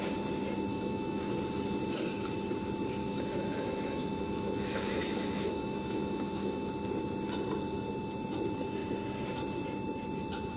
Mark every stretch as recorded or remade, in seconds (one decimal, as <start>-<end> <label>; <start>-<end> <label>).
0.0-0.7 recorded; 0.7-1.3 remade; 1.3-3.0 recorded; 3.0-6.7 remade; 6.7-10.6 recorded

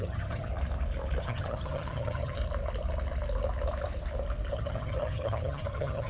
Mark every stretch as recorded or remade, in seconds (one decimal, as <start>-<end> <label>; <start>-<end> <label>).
0.0-0.5 remade; 0.5-1.2 recorded; 1.2-2.4 remade; 2.4-4.5 recorded; 4.5-6.1 remade

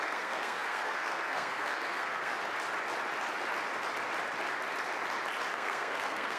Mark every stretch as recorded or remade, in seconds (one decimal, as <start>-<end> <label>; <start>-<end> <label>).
0.0-2.3 remade; 2.3-5.5 recorded; 5.5-6.4 remade